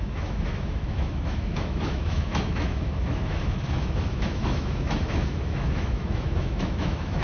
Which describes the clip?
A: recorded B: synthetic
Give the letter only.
B